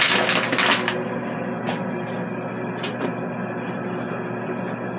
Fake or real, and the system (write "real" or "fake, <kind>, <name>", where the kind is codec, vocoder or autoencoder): real